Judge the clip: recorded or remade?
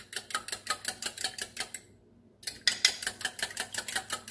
recorded